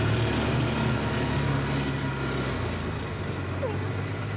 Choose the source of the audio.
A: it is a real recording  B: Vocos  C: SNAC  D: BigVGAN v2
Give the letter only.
A